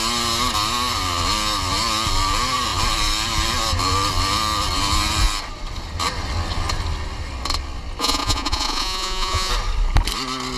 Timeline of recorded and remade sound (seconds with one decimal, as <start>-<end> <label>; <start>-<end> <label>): 0.0-8.0 recorded; 8.0-9.5 remade; 9.5-10.6 recorded